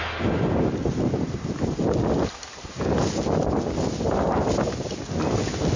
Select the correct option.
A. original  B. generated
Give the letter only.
A